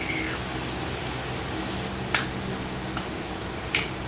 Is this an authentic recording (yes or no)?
yes